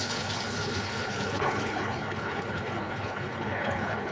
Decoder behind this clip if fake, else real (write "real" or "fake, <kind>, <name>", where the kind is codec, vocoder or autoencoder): fake, codec, HILCodec